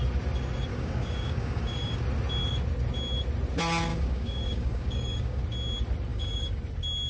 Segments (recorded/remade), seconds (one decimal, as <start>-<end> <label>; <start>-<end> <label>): 0.0-0.7 recorded; 0.7-2.0 remade; 2.0-3.9 recorded; 3.9-5.4 remade; 5.4-6.1 recorded; 6.1-6.6 remade; 6.6-7.1 recorded